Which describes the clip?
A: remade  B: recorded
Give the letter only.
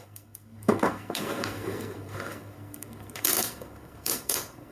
A